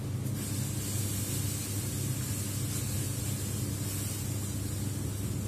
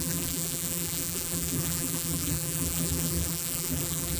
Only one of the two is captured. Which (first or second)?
first